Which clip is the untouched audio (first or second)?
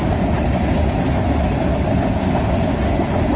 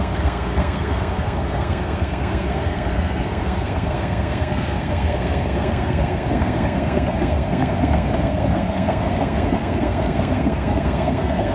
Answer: first